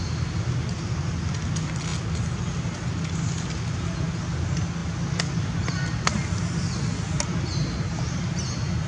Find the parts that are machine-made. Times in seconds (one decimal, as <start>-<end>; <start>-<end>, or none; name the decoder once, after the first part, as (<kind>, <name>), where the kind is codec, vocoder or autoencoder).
none